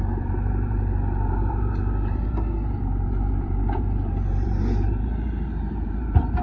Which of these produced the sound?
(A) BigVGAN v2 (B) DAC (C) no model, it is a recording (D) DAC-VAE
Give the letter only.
A